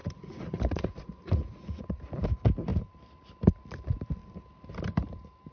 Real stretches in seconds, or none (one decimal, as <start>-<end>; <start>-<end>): 2.0-5.5